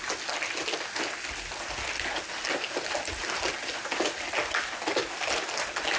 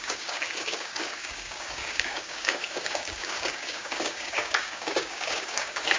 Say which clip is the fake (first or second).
second